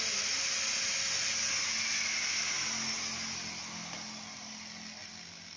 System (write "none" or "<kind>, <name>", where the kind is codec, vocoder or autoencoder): none